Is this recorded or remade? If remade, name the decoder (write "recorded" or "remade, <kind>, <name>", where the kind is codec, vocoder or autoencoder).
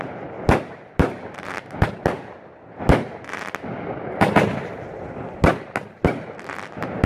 recorded